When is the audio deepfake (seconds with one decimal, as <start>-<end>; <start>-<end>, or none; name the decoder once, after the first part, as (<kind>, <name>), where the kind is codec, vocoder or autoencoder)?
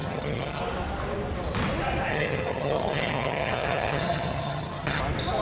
0.0-0.6 (vocoder, HiFi-GAN); 2.1-5.0